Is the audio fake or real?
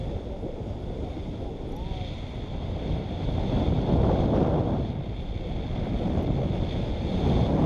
real